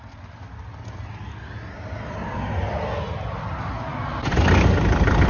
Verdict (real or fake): real